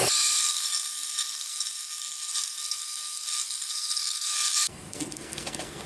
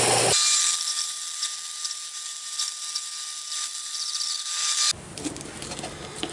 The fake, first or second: first